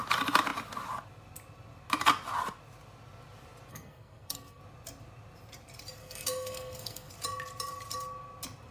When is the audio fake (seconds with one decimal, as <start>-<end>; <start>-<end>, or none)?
3.7-4.6; 6.0-7.1